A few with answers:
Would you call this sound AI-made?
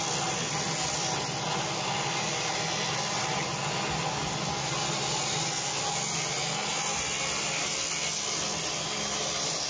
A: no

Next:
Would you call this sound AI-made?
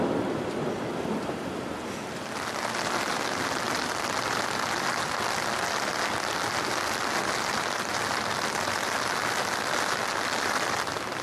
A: no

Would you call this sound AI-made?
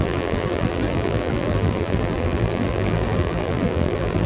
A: yes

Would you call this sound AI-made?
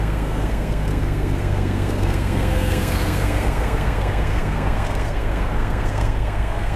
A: yes